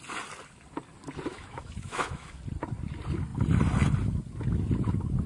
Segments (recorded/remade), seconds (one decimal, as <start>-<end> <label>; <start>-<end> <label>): 0.0-1.3 recorded; 1.3-2.4 remade; 2.4-5.3 recorded